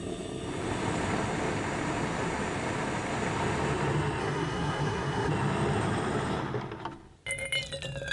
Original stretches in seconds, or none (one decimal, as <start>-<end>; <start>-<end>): 0.0-4.2; 5.3-8.1